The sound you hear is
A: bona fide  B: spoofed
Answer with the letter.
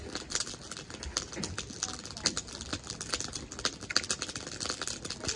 A